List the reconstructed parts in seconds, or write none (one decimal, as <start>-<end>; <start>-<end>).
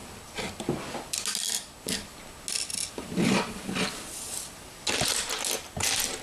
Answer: none